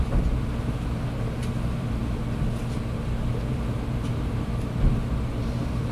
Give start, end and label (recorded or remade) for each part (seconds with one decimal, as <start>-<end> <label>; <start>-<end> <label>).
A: 0.0-2.0 remade; 2.0-3.3 recorded; 3.3-5.9 remade